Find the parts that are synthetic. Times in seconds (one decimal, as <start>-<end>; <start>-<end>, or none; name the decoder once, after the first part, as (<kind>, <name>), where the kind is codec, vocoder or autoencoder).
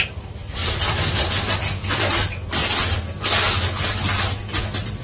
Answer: 0.0-0.6 (vocoder, BigVGAN v2); 1.2-2.6; 4.0-5.0